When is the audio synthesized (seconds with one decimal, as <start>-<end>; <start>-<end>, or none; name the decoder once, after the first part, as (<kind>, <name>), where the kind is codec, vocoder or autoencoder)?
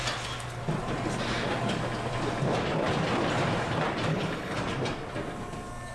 4.1-4.6 (codec, HILCodec)